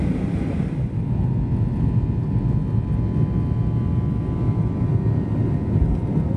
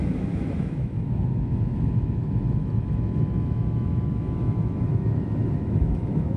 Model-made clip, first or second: second